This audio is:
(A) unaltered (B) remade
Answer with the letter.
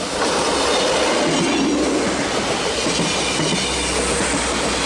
A